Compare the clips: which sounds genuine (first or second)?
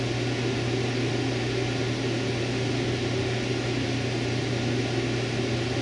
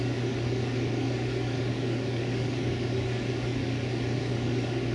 first